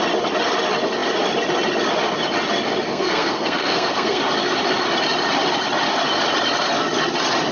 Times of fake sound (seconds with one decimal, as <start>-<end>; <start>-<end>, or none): 2.9-4.2